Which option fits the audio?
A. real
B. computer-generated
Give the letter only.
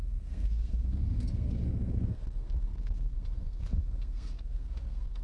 B